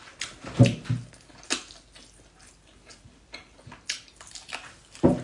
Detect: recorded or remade recorded